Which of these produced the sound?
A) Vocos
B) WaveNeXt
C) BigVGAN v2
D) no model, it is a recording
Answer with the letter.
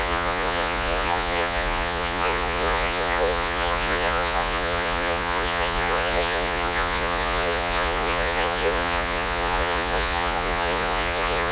A